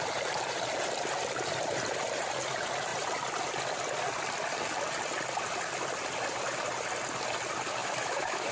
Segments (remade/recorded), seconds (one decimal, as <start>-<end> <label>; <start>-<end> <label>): 0.0-7.8 recorded; 7.8-8.5 remade